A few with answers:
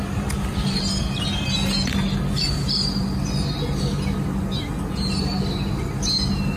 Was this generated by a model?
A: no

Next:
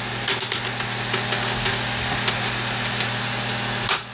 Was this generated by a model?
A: no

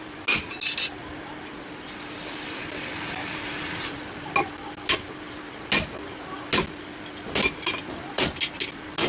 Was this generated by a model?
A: no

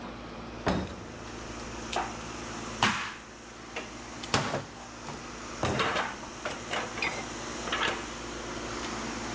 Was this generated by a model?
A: no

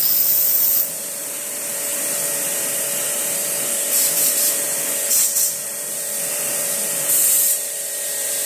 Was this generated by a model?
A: yes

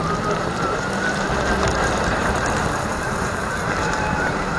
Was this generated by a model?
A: yes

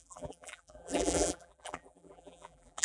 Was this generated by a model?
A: yes